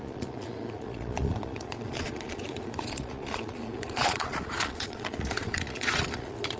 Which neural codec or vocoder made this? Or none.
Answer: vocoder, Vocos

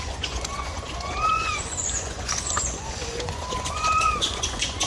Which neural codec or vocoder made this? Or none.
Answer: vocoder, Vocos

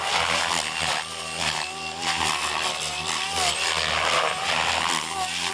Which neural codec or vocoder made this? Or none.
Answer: none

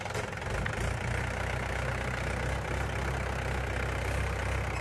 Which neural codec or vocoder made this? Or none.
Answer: none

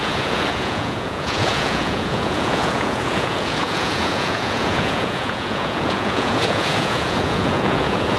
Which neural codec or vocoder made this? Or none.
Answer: vocoder, Vocos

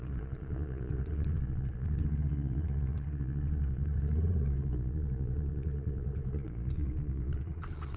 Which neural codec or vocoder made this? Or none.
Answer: vocoder, Vocos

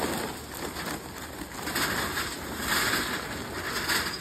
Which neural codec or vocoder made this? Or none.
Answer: none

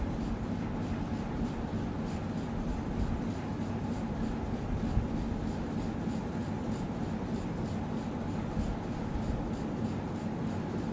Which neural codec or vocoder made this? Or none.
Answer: none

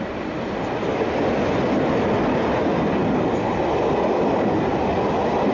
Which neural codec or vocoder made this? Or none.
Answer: none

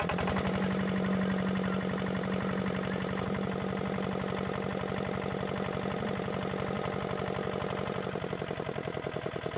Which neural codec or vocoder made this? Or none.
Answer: none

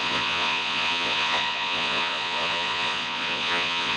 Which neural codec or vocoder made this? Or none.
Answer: vocoder, Vocos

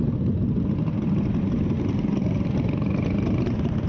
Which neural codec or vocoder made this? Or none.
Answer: none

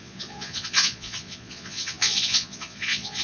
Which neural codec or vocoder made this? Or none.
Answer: vocoder, Vocos